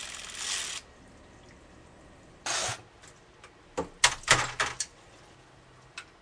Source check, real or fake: real